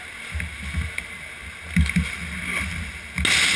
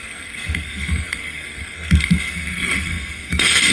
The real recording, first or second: first